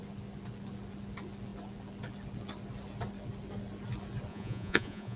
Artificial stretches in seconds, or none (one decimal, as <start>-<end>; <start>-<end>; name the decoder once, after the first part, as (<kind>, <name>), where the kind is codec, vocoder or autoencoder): 4.3-5.2 (vocoder, Vocos)

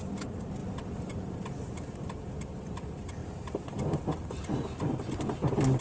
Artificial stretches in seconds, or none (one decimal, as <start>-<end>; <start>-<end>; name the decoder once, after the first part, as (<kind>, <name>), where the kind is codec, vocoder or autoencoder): 3.2-4.0 (vocoder, BigVGAN v2)

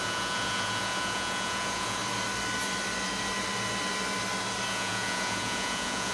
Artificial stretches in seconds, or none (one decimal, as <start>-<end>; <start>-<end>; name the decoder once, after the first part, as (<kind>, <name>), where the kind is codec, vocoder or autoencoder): 0.0-2.0 (vocoder, Vocos); 4.7-6.1

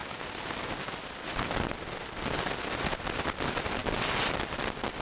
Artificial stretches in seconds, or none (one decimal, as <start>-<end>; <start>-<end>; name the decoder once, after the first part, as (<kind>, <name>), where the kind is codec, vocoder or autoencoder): none

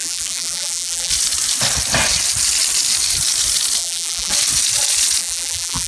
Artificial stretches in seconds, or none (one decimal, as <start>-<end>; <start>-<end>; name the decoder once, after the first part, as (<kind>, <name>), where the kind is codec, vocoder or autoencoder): 0.0-1.1 (vocoder, BigVGAN v2); 3.8-4.3; 5.2-5.9